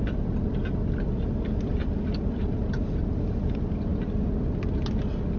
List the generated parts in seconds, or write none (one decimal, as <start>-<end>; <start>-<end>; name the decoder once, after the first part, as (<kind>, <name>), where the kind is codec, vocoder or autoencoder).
0.0-3.9 (vocoder, BigVGAN v2)